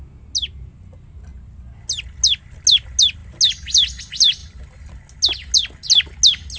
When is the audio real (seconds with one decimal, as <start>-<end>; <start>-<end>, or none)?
0.0-6.6